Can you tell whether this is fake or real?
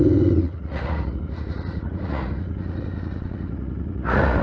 fake